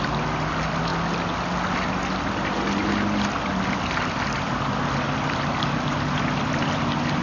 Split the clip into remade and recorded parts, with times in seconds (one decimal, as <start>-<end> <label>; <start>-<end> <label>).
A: 0.0-7.2 recorded

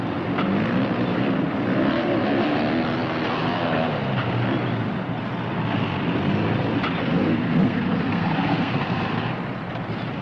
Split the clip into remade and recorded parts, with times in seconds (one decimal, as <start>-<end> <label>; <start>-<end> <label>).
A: 0.0-7.0 recorded; 7.0-9.2 remade; 9.2-10.2 recorded

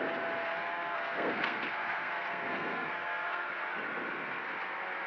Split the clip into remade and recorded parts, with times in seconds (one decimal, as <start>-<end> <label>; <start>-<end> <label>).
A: 0.0-0.4 recorded; 0.4-3.5 remade; 3.5-5.1 recorded